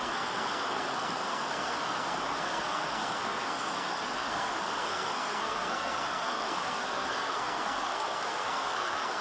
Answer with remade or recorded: remade